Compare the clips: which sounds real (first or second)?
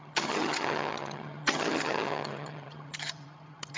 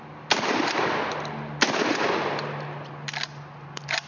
second